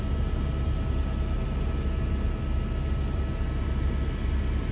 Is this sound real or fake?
real